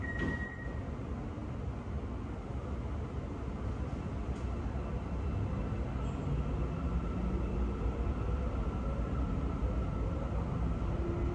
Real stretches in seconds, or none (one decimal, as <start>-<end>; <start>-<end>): 0.0-11.3